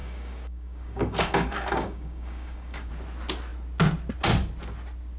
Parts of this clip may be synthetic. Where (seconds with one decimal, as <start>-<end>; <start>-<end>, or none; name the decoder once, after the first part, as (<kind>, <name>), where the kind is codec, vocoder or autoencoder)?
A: 0.0-2.9 (codec, DAC)